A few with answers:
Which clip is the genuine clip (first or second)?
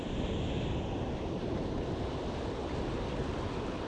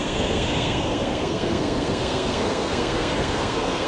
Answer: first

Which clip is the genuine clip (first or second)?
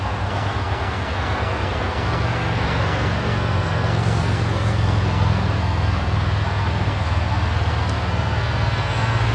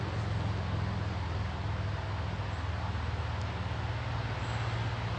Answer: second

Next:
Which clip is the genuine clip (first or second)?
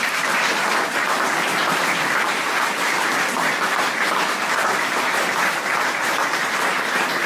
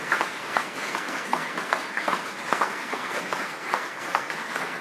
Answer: first